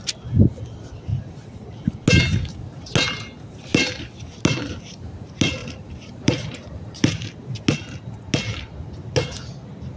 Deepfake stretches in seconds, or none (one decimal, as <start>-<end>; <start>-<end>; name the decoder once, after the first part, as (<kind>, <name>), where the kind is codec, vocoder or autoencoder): 5.6-7.2 (vocoder, BigVGAN v2)